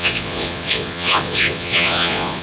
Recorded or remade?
remade